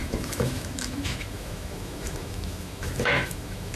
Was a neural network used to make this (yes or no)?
yes